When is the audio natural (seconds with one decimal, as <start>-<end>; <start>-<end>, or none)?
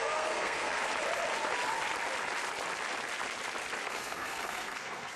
0.8-3.9